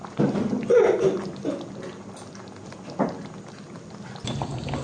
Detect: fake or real real